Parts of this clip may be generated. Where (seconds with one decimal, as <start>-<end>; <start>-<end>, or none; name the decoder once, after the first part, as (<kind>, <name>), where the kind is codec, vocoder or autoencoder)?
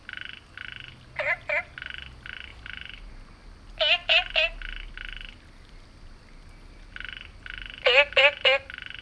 2.5-3.1 (vocoder, BigVGAN v2)